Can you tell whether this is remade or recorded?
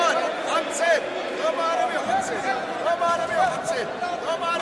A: recorded